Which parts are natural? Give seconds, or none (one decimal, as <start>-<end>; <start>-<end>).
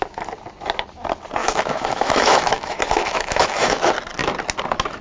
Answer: 0.0-1.4; 3.8-5.0